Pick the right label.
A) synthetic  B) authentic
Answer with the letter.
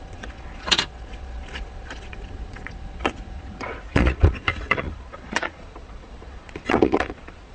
A